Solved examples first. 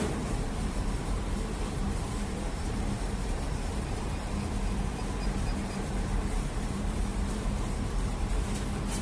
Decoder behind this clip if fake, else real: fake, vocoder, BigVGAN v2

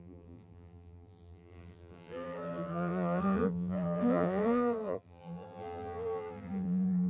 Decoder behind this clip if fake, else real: fake, vocoder, BigVGAN v2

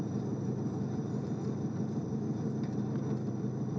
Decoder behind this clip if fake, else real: fake, vocoder, BigVGAN v2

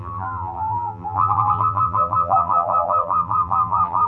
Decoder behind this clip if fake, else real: fake, vocoder, BigVGAN v2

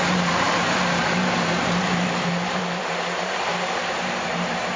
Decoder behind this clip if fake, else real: fake, vocoder, BigVGAN v2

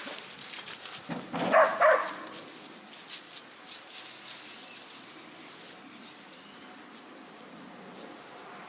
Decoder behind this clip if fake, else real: real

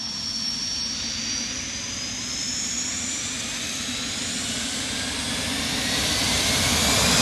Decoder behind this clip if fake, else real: real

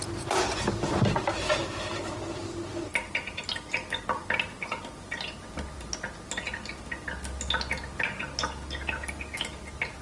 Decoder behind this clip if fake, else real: real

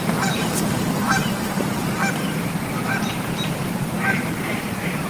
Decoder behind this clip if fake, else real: fake, vocoder, BigVGAN v2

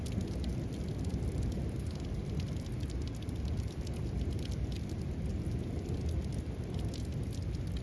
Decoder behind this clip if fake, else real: fake, vocoder, BigVGAN v2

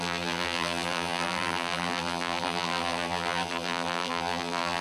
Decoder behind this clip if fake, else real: fake, vocoder, BigVGAN v2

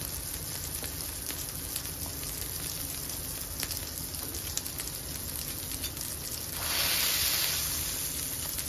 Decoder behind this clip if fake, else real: real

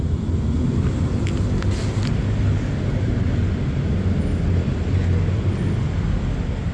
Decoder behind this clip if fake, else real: real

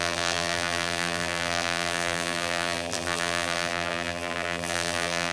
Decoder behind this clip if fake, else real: fake, vocoder, BigVGAN v2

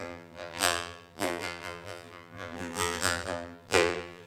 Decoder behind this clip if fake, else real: fake, vocoder, BigVGAN v2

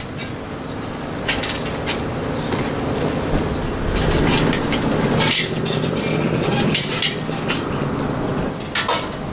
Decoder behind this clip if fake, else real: real